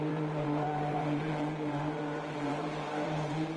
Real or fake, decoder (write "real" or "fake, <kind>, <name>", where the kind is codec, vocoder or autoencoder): fake, vocoder, BigVGAN v2